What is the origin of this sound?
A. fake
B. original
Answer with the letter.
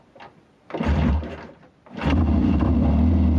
B